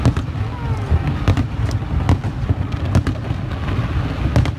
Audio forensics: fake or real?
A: real